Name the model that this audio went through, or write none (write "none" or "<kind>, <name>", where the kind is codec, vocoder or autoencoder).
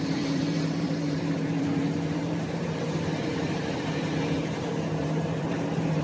vocoder, BigVGAN v2